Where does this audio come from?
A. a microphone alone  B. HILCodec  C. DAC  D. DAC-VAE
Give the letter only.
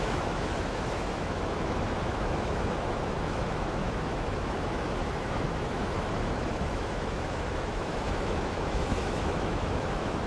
D